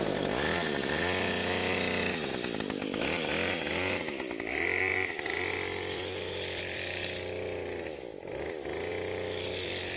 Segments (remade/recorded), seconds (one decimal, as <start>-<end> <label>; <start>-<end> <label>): 0.0-4.9 recorded; 4.9-7.0 remade; 7.0-8.9 recorded; 8.9-10.0 remade